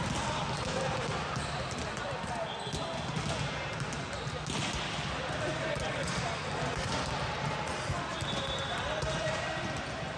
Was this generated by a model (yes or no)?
no